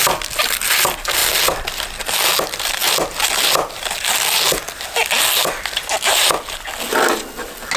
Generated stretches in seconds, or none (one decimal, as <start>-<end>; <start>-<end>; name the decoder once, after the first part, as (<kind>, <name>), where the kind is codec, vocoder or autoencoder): none